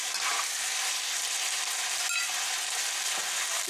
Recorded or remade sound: recorded